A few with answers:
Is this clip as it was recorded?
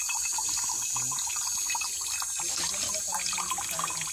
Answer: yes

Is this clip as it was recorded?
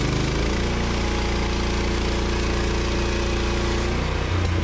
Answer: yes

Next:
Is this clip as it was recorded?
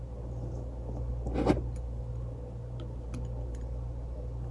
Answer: yes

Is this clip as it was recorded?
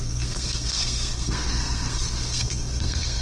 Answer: no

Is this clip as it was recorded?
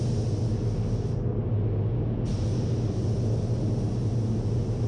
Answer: yes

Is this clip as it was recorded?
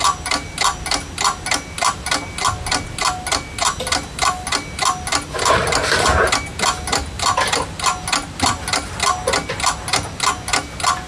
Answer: yes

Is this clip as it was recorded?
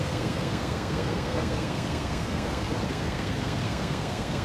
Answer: no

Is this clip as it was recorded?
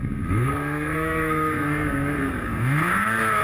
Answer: no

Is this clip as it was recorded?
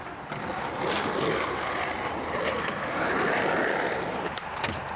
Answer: yes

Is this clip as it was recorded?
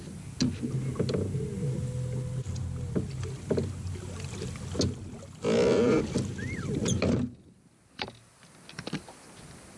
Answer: yes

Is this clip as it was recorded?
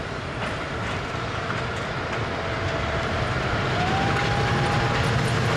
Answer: yes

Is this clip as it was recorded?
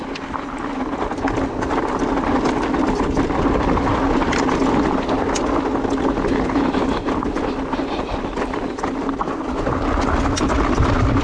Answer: yes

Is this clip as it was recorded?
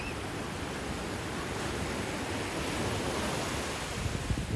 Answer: yes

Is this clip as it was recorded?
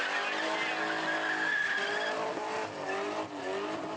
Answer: yes